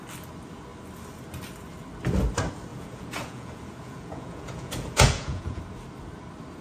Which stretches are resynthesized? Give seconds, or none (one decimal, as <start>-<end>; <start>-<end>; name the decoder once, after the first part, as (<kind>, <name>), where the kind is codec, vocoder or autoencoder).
2.7-5.6 (vocoder, Vocos)